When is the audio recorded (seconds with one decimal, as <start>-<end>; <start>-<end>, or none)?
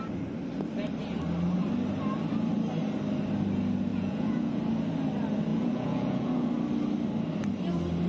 0.0-3.9; 4.6-5.5; 6.5-8.1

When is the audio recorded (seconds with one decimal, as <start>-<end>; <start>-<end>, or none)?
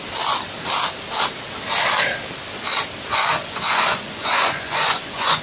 0.0-3.1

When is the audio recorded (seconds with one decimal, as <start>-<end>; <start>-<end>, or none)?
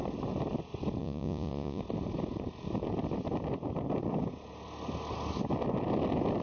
0.0-1.0; 1.8-6.4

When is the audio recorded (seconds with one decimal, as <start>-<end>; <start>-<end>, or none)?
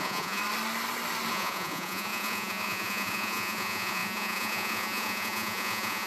0.4-1.3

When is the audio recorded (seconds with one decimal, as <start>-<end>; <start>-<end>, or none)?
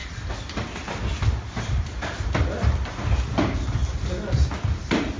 0.0-5.2